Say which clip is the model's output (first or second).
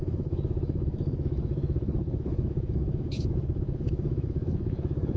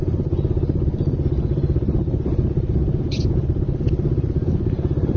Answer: first